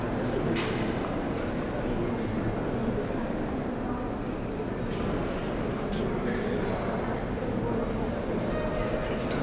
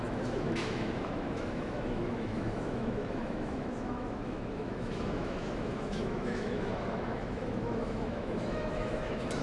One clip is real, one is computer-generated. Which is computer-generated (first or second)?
second